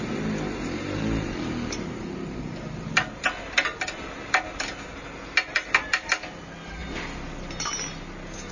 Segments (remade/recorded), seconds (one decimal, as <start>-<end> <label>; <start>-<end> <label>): 0.0-8.5 recorded